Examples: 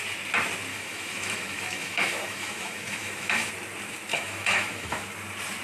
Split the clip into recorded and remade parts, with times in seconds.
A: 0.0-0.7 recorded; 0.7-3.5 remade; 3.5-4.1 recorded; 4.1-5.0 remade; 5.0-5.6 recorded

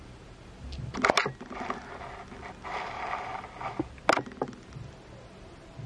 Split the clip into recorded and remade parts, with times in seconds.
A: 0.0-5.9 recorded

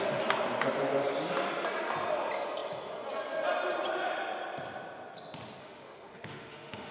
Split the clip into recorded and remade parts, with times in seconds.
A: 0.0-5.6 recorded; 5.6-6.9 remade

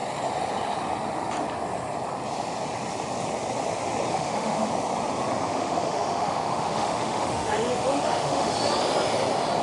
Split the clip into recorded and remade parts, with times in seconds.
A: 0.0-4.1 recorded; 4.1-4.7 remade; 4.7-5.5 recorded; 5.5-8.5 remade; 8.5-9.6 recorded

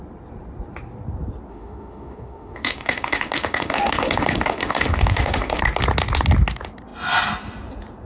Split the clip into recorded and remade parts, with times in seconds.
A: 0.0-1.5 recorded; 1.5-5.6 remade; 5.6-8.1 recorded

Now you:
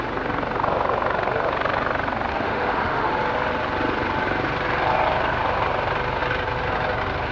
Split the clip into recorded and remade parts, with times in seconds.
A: 0.0-2.3 recorded; 2.3-3.1 remade; 3.1-7.3 recorded

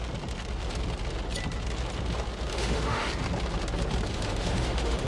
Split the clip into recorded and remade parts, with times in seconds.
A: 0.0-2.5 recorded; 2.5-3.1 remade; 3.1-4.1 recorded; 4.1-5.1 remade